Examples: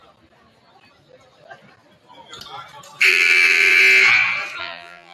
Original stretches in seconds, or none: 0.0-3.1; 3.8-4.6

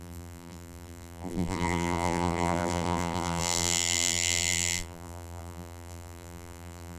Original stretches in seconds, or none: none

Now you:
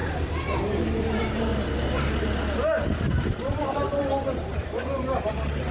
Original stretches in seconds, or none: 0.0-0.8; 1.5-2.8

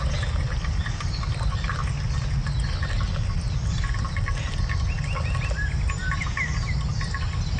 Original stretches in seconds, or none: 0.0-2.4; 5.0-7.6